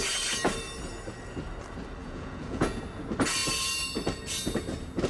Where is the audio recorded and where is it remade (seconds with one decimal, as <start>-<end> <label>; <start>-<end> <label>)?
0.0-2.0 recorded; 2.0-2.8 remade; 2.8-5.1 recorded